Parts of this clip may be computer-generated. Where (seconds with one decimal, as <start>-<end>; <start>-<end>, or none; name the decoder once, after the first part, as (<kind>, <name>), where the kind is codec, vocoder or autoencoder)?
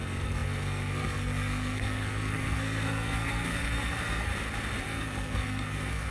0.0-4.3 (codec, SNAC); 4.8-6.1